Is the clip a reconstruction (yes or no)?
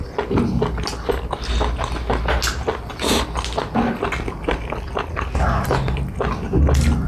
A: no